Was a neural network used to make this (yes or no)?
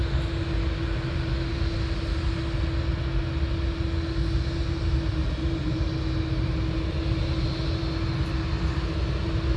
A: no